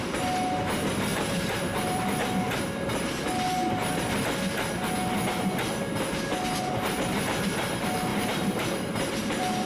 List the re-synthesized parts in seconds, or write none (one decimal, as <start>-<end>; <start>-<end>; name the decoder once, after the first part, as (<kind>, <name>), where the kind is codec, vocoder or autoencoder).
1.1-2.3 (vocoder, BigVGAN v2); 8.1-9.7